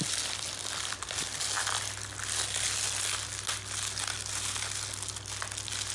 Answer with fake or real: real